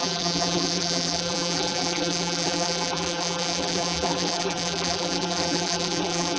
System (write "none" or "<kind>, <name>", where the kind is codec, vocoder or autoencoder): vocoder, BigVGAN v2